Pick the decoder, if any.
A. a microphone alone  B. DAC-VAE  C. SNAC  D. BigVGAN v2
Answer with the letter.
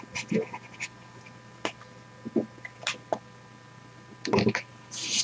A